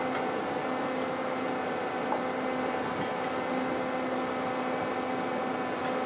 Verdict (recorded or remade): recorded